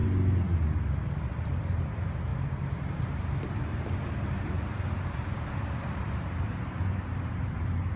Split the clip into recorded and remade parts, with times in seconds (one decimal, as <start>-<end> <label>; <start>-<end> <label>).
0.0-1.1 recorded; 1.1-8.0 remade

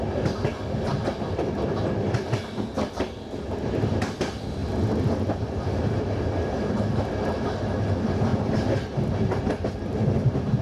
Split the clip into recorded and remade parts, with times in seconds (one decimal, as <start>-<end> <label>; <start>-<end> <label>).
0.0-4.6 recorded; 4.6-5.8 remade; 5.8-8.3 recorded; 8.3-9.7 remade; 9.7-10.6 recorded

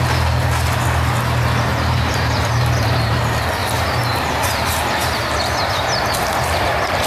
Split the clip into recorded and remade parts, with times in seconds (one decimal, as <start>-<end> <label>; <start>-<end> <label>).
0.0-1.7 recorded; 1.7-3.2 remade; 3.2-3.6 recorded; 3.6-5.6 remade; 5.6-7.1 recorded

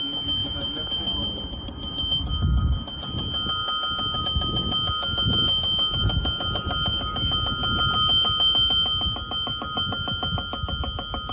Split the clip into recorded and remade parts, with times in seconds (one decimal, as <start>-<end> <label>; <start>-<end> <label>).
0.0-0.4 recorded; 0.4-2.0 remade; 2.0-11.3 recorded

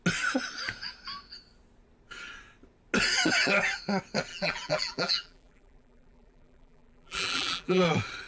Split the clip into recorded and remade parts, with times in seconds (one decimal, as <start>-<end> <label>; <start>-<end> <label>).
0.0-4.3 recorded; 4.3-7.8 remade; 7.8-8.3 recorded

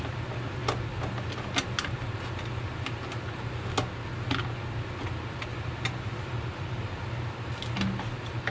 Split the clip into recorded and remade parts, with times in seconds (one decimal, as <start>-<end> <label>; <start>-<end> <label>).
0.0-5.5 recorded; 5.5-7.0 remade; 7.0-8.5 recorded